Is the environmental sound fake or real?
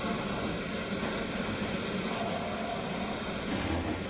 real